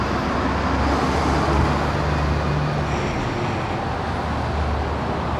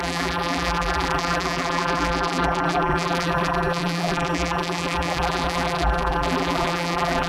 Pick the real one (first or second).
first